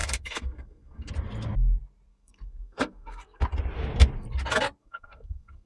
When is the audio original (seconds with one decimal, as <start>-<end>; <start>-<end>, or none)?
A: 1.1-2.1; 3.4-4.8